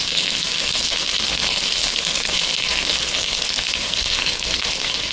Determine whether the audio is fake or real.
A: fake